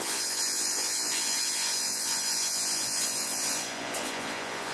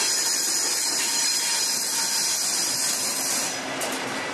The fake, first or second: first